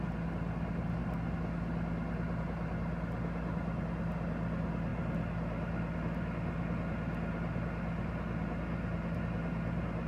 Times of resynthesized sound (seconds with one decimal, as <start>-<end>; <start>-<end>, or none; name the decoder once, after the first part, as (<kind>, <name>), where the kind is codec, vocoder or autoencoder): none